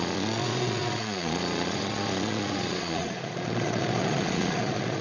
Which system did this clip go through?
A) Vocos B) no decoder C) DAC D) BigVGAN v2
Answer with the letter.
A